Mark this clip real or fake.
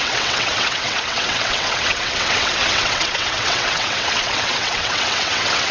fake